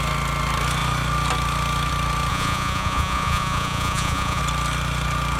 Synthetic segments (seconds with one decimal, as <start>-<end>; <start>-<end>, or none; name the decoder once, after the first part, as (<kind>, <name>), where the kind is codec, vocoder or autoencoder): 2.3-4.4 (vocoder, Vocos)